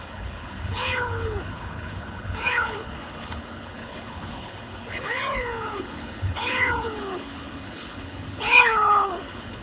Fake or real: fake